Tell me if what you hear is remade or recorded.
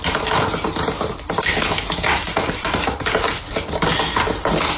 recorded